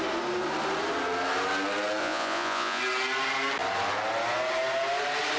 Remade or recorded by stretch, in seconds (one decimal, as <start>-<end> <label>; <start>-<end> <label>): 0.0-2.0 recorded; 2.0-2.8 remade; 2.8-5.4 recorded